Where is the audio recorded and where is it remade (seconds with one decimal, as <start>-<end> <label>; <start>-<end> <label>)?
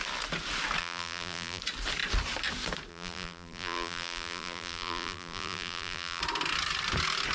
0.0-0.8 recorded; 0.8-1.6 remade; 1.6-2.9 recorded; 2.9-6.2 remade; 6.2-7.3 recorded